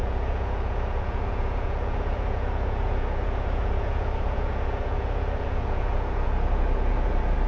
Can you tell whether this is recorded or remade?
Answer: remade